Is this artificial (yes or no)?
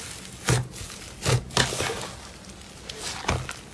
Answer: no